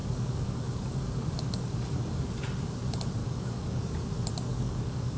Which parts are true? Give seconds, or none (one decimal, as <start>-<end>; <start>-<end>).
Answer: 2.3-3.2; 4.1-4.5